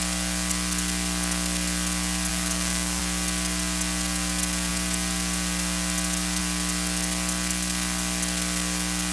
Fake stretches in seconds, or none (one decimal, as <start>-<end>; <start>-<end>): 2.3-3.0